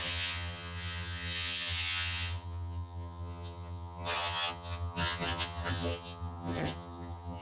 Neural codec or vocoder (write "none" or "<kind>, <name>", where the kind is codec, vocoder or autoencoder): vocoder, HiFi-GAN